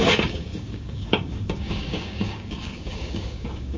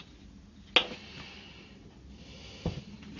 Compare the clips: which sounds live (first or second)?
second